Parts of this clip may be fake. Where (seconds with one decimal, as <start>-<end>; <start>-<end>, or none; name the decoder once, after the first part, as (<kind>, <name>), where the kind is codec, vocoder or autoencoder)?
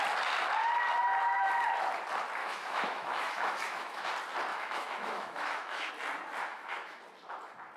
2.4-4.1 (autoencoder, DAC-VAE); 4.5-5.9; 6.5-7.0